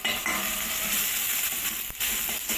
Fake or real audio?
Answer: real